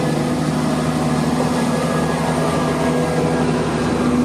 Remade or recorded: recorded